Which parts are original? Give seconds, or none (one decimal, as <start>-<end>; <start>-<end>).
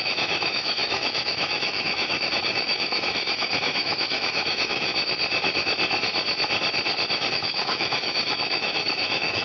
4.9-7.3